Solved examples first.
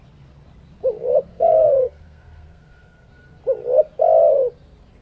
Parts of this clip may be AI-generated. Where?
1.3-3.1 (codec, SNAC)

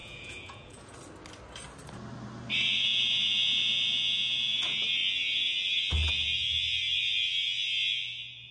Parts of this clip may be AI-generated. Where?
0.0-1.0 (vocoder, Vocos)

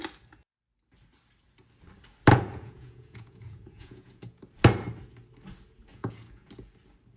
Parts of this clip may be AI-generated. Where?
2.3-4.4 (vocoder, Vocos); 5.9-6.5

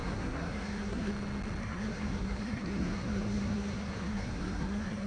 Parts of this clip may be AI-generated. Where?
0.0-1.1 (codec, SNAC); 1.6-5.1

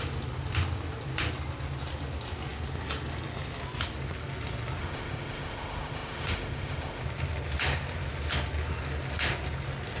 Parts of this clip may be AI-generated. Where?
4.8-7.0 (autoencoder, DAC-VAE)

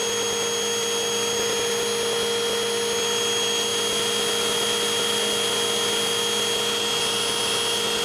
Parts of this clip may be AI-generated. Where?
none